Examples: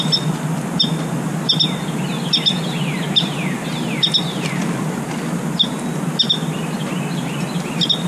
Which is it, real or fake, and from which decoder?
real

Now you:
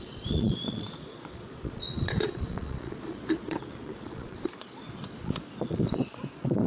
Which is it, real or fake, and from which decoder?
fake, vocoder, Vocos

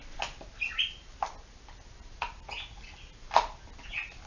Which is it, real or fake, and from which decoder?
real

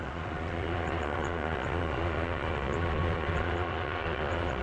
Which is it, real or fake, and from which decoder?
fake, vocoder, Vocos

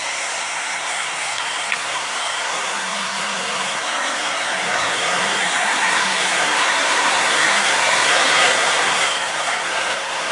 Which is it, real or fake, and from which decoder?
fake, codec, SNAC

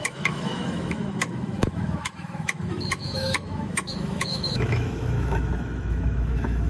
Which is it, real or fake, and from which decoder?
fake, autoencoder, DAC-VAE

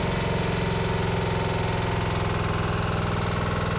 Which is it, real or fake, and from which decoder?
real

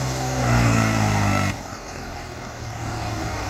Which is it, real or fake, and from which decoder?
fake, codec, DAC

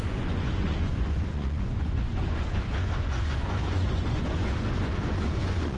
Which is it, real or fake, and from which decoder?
fake, vocoder, Vocos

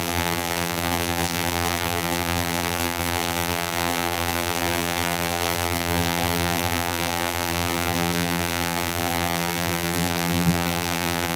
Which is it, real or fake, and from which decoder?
fake, vocoder, BigVGAN v2